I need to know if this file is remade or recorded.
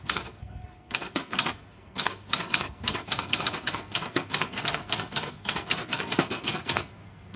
remade